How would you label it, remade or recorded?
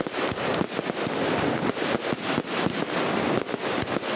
recorded